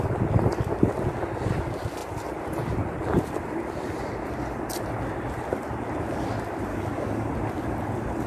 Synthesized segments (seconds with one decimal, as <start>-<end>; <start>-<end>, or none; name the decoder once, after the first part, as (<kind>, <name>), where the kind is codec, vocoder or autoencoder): 6.7-7.3 (codec, DAC)